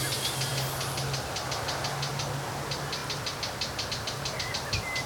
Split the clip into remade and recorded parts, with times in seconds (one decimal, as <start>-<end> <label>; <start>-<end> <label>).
0.0-5.1 recorded